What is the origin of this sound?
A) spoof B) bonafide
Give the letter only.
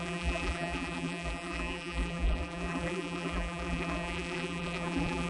A